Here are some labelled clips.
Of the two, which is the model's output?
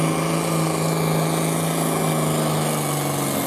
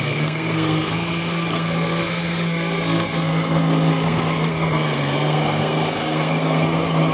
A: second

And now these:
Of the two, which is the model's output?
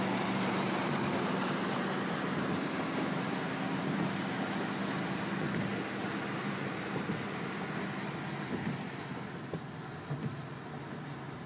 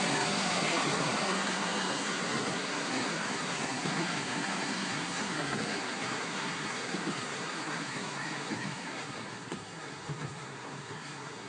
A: second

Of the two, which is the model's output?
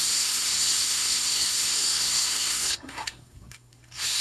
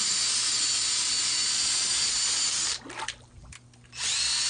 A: first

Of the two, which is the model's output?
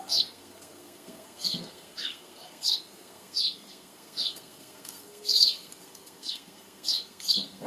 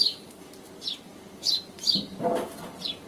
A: first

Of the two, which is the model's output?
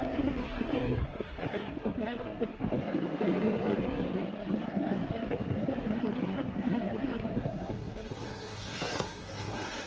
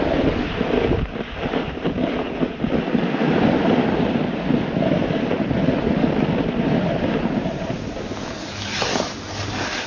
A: first